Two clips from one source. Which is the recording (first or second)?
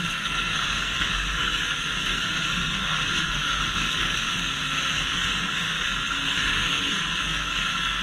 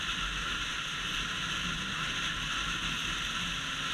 second